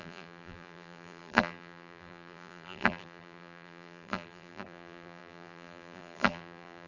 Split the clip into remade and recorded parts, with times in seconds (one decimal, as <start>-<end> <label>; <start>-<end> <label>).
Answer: 0.0-6.9 remade